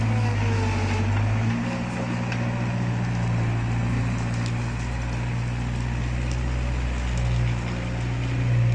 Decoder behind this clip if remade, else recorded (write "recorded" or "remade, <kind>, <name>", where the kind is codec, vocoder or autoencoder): recorded